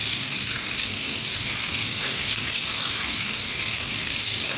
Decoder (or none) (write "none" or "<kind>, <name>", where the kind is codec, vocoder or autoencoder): codec, DAC